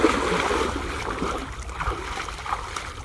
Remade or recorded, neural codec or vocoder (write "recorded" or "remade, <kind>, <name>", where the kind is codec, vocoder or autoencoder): recorded